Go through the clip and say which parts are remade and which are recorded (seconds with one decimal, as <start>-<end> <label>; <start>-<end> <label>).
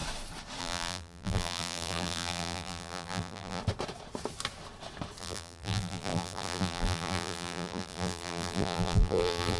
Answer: 0.0-0.6 recorded; 0.6-3.6 remade; 3.6-5.2 recorded; 5.2-9.6 remade